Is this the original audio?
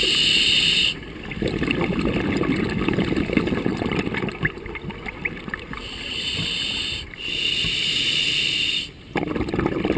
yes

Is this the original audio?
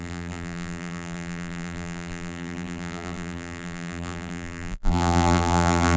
no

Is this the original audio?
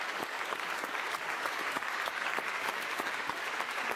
no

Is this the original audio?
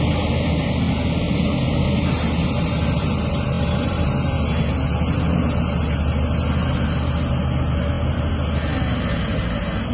yes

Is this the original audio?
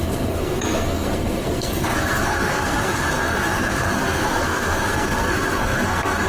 no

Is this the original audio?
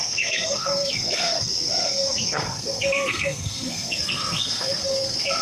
no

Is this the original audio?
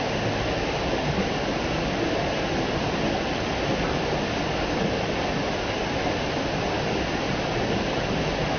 yes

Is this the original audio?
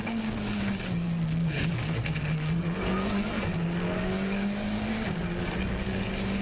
no